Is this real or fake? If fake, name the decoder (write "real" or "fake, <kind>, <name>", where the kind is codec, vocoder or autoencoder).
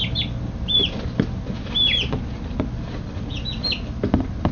real